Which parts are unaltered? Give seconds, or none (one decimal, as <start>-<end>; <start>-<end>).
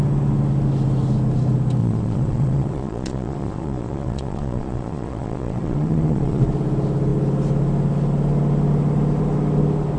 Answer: 0.0-1.8; 6.4-10.0